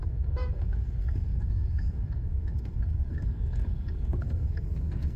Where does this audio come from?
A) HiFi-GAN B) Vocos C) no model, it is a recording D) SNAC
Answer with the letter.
D